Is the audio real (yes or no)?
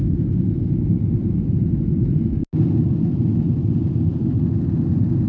yes